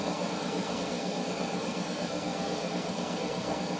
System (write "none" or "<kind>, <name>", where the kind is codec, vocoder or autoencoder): codec, SNAC